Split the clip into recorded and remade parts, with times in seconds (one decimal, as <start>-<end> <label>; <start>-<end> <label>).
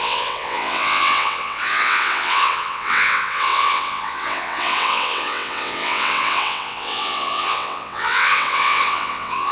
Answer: 0.0-9.5 remade